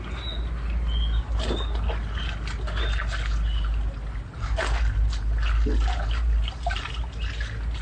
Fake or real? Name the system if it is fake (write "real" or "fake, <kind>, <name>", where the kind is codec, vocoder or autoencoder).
real